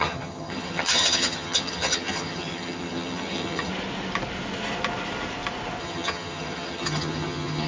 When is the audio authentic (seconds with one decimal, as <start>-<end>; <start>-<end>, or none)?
3.7-5.8